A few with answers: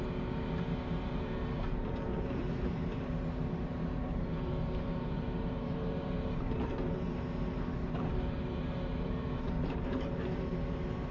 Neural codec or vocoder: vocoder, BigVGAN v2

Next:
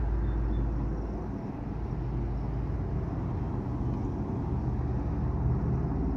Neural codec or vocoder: none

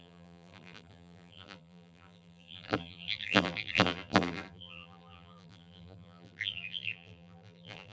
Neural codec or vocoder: vocoder, BigVGAN v2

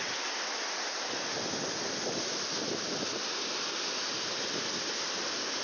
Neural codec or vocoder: none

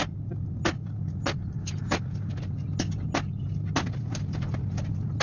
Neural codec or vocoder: none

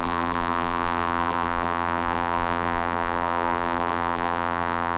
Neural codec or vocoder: vocoder, BigVGAN v2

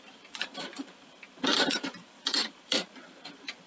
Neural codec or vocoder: vocoder, BigVGAN v2